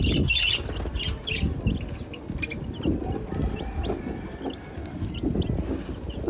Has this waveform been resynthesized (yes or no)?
no